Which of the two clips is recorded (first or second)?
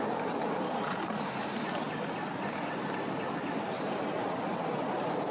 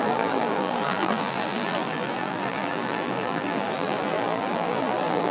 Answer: first